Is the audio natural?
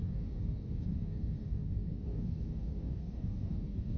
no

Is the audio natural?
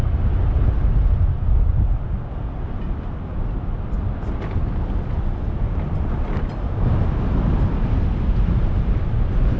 yes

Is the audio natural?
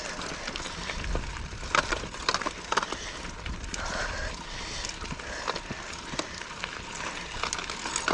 yes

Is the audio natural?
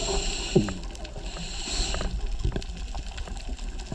yes